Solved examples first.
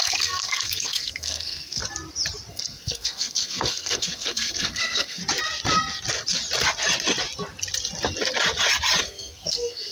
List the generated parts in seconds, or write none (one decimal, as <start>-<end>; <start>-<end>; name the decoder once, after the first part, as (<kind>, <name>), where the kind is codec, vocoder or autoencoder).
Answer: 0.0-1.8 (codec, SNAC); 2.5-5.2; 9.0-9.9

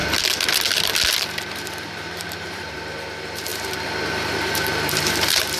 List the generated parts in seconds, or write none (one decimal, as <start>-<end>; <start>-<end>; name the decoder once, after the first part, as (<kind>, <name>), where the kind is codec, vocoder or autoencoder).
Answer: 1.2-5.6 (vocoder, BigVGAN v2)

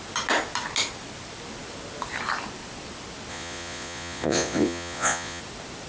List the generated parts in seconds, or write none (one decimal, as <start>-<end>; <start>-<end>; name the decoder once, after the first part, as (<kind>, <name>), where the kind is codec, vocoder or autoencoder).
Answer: 3.3-5.4 (vocoder, Vocos)

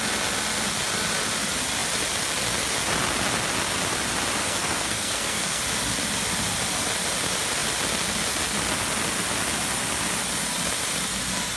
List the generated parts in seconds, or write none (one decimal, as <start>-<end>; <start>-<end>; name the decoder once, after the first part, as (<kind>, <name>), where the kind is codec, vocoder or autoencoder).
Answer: 4.4-5.6 (codec, SNAC)